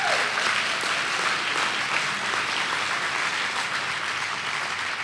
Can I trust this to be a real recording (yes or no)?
yes